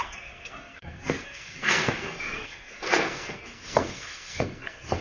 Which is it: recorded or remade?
remade